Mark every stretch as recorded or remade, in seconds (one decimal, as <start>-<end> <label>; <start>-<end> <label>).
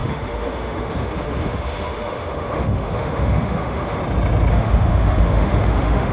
0.0-4.0 remade; 4.0-4.5 recorded; 4.5-6.1 remade